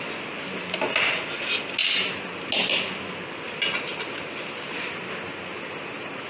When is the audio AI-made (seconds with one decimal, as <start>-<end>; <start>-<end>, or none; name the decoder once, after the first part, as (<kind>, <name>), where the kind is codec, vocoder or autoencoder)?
none